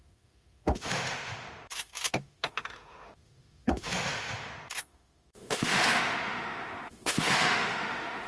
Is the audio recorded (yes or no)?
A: no